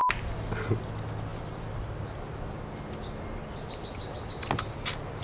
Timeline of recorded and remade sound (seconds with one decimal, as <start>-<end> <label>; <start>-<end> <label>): 0.0-5.2 recorded